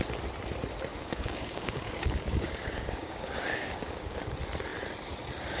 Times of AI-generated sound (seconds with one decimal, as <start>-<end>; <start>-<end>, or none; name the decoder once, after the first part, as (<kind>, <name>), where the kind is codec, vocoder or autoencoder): 0.9-4.3 (codec, DAC)